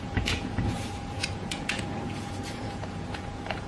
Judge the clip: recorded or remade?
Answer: remade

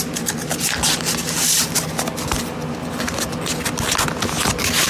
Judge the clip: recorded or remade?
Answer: recorded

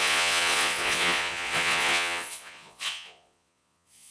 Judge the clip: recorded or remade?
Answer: remade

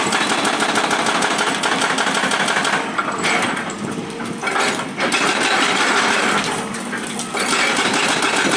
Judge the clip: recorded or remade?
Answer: recorded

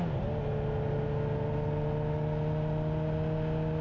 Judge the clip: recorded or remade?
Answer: recorded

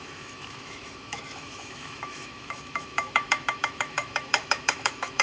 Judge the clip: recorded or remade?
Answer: remade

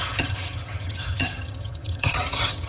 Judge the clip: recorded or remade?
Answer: remade